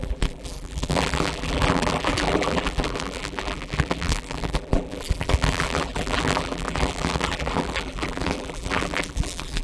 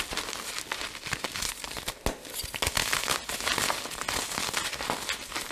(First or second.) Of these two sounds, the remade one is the first